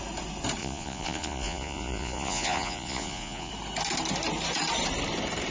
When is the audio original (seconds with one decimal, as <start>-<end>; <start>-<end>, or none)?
0.0-0.6; 3.5-5.5